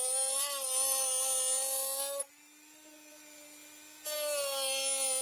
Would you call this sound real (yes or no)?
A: yes